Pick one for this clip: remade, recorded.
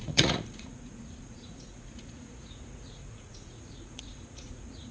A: remade